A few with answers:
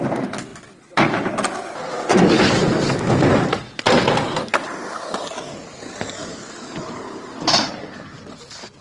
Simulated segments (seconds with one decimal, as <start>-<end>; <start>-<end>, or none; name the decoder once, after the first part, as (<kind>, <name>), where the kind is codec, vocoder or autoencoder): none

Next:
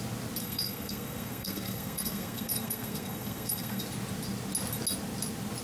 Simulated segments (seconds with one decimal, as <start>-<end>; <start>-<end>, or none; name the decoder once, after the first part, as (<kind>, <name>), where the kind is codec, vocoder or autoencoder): 0.4-3.8 (codec, SNAC)

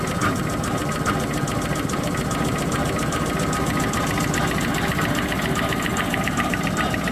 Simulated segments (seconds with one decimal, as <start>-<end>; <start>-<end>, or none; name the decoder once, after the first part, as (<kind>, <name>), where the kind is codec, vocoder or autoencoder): none